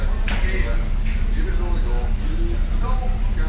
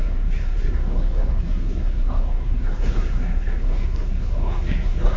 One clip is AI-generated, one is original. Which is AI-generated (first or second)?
second